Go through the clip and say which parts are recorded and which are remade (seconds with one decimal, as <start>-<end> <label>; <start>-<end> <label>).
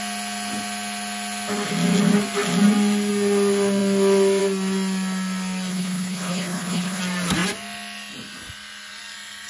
0.0-5.7 recorded; 5.7-7.0 remade; 7.0-9.5 recorded